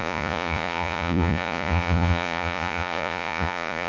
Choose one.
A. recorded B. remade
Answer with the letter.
B